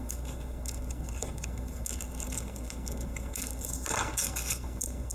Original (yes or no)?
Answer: no